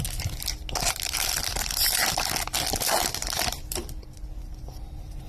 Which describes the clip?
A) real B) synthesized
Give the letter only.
A